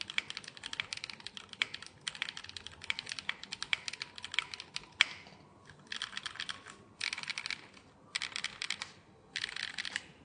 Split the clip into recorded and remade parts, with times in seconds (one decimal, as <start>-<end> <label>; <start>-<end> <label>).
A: 0.0-10.2 recorded